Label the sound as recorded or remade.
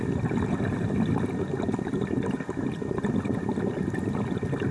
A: recorded